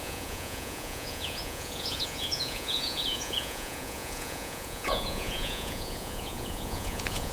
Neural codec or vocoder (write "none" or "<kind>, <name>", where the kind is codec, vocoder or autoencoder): vocoder, Vocos